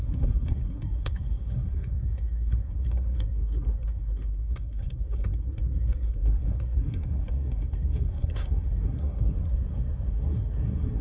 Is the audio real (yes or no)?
no